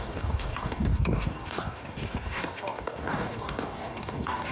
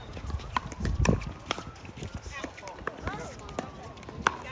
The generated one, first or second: first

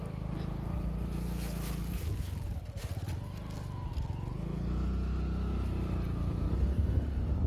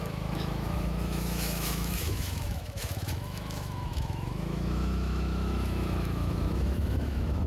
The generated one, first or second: second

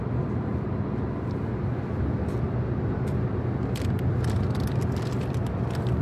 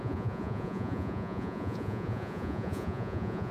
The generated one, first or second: second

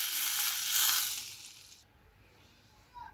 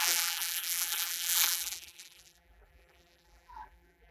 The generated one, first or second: second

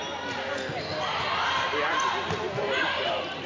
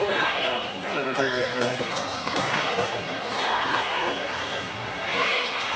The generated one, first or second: second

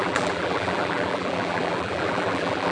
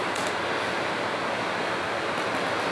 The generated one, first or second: first